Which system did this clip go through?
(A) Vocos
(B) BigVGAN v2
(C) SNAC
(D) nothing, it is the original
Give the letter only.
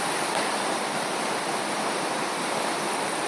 B